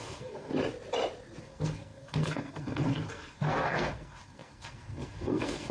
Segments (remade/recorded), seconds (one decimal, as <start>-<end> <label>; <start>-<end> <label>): 0.0-0.5 remade; 0.5-1.4 recorded; 1.4-5.7 remade